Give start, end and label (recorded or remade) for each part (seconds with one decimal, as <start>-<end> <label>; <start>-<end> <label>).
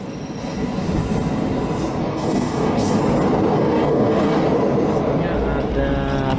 0.0-2.0 recorded; 2.0-3.0 remade; 3.0-3.5 recorded; 3.5-4.4 remade; 4.4-6.4 recorded